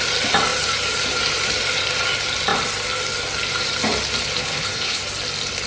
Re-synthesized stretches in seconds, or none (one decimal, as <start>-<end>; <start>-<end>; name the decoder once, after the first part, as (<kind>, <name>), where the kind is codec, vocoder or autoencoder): 4.4-5.0 (codec, HILCodec)